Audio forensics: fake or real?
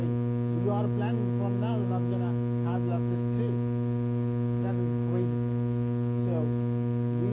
real